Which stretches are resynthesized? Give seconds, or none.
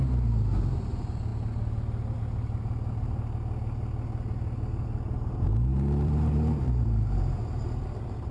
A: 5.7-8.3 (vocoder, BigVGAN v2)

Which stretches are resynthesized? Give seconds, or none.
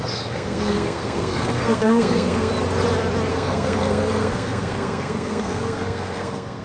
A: 0.0-2.5 (codec, SNAC); 3.3-6.6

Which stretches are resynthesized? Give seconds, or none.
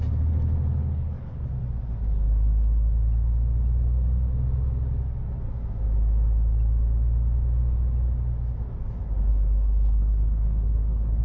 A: 0.8-1.5 (codec, HILCodec); 9.3-11.2